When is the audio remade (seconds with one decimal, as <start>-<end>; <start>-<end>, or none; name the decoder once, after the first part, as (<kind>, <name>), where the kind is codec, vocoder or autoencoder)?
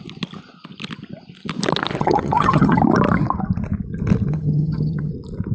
2.0-2.8 (vocoder, HiFi-GAN); 4.3-5.1